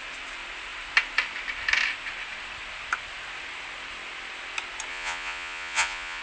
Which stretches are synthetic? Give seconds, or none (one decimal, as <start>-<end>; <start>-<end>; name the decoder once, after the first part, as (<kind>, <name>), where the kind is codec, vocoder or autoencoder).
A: 4.9-6.2 (vocoder, Vocos)